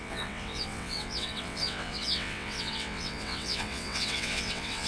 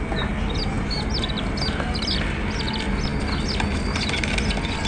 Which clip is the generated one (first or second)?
first